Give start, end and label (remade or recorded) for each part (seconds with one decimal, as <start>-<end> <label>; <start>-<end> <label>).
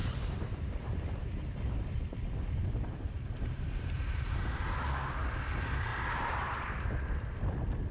0.0-4.3 remade; 4.3-5.9 recorded; 5.9-7.0 remade; 7.0-7.9 recorded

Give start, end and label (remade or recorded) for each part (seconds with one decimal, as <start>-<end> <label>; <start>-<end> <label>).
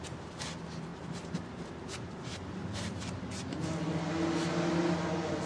0.0-3.3 remade; 3.3-4.7 recorded; 4.7-5.5 remade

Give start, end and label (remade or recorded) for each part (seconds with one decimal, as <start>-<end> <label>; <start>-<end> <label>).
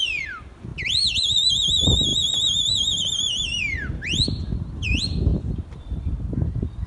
0.0-2.1 recorded; 2.1-3.0 remade; 3.0-5.3 recorded; 5.3-6.9 remade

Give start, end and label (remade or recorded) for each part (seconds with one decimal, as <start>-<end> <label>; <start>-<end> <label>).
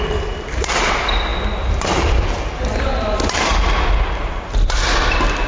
0.0-5.5 recorded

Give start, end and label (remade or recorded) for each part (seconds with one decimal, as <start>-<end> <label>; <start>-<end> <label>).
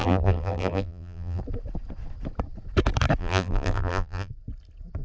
0.0-1.4 remade; 1.4-3.2 recorded; 3.2-4.3 remade; 4.3-5.0 recorded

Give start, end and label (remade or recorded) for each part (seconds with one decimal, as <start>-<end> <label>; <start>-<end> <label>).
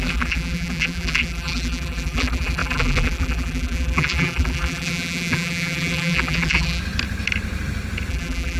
0.0-6.8 remade; 6.8-8.1 recorded; 8.1-8.6 remade